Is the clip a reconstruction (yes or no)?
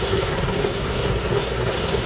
yes